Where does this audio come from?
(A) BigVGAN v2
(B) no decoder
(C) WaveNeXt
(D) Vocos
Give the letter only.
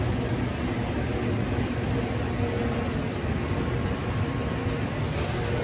B